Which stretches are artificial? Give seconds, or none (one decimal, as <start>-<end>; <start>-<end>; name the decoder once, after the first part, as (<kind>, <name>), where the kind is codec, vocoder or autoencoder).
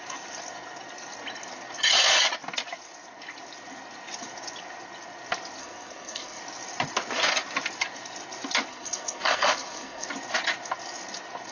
5.6-6.4 (codec, SNAC); 8.7-10.1